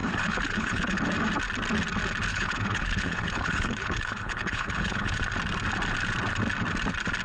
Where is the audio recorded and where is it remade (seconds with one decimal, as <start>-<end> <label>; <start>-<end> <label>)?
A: 0.0-1.0 remade; 1.0-2.3 recorded; 2.3-5.2 remade; 5.2-7.2 recorded